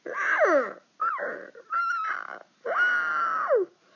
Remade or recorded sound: recorded